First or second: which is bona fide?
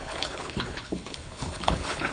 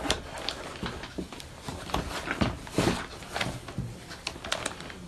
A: second